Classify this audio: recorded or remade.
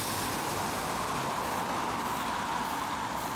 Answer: recorded